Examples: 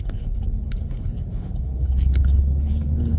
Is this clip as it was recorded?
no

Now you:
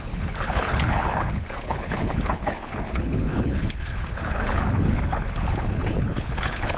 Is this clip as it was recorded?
no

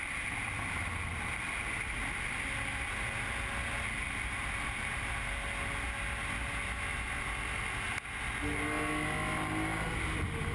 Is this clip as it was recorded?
yes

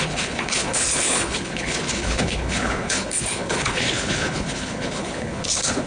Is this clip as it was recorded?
no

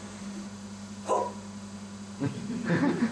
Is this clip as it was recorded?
yes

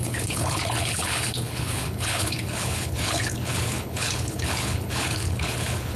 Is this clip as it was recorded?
no